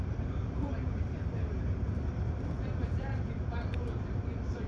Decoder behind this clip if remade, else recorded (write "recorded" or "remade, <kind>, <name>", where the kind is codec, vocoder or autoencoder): remade, vocoder, BigVGAN v2